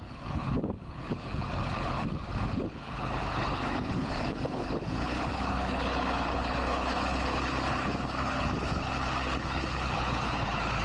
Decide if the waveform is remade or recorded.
remade